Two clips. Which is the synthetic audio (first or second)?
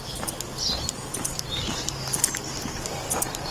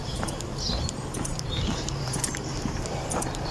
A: second